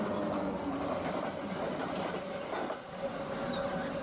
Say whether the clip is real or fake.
real